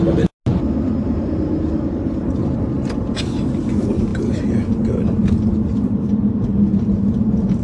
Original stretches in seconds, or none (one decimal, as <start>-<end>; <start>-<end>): 0.0-0.5; 2.6-7.6